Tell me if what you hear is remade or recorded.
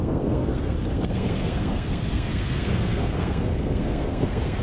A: remade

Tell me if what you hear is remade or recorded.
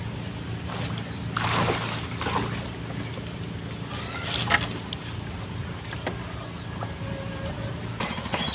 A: recorded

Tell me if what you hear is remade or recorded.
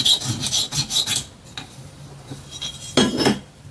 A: recorded